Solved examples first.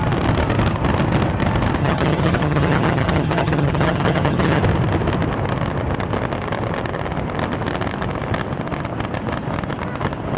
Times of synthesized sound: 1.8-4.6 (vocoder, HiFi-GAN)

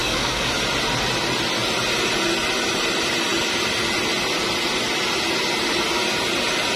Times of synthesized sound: 0.0-0.5 (codec, DAC)